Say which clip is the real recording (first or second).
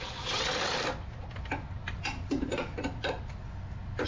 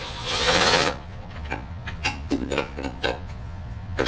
first